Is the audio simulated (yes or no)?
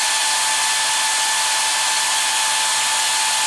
no